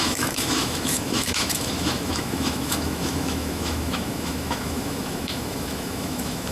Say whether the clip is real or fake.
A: fake